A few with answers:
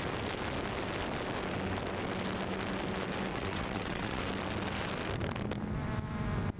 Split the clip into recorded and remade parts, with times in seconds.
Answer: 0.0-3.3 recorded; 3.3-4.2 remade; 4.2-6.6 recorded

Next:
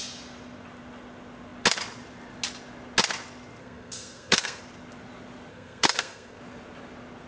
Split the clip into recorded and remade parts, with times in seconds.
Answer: 0.0-3.6 recorded; 3.6-4.6 remade; 4.6-5.5 recorded; 5.5-6.4 remade; 6.4-7.3 recorded

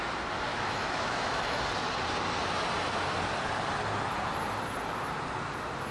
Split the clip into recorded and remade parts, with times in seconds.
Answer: 0.0-0.5 recorded; 0.5-1.6 remade; 1.6-5.9 recorded

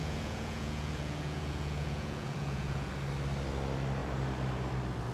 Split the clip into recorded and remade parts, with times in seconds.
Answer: 0.0-2.9 remade; 2.9-5.1 recorded

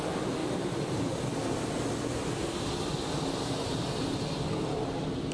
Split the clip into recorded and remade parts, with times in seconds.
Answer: 0.0-0.4 recorded; 0.4-1.2 remade; 1.2-5.3 recorded